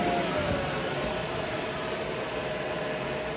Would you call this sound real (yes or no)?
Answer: yes